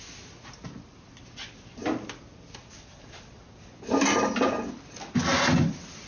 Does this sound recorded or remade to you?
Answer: recorded